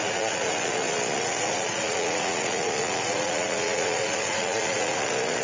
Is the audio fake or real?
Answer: fake